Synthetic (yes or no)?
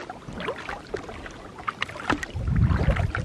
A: no